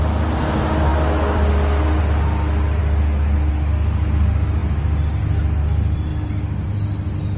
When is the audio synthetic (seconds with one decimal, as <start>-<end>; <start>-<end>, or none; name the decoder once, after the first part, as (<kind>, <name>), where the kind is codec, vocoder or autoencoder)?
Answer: 2.8-3.5 (autoencoder, DAC-VAE)